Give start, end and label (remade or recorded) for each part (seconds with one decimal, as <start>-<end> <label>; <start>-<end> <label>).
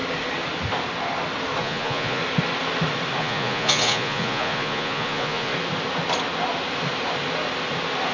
0.0-1.6 recorded; 1.6-2.2 remade; 2.2-3.2 recorded; 3.2-5.5 remade; 5.5-8.1 recorded